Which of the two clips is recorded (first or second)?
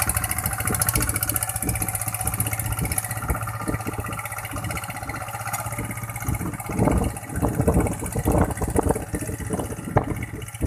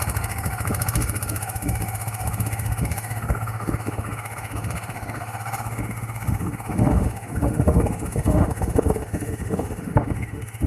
first